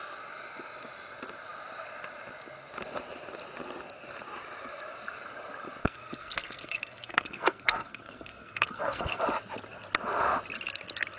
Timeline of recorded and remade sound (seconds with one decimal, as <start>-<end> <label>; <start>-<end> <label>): 0.0-5.8 recorded; 5.8-9.2 remade; 9.2-11.2 recorded